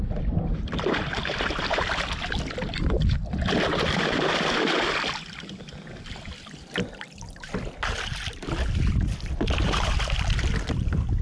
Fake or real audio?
fake